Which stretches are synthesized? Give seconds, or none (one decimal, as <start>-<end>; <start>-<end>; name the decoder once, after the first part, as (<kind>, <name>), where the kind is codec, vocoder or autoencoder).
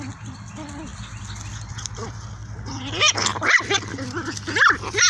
none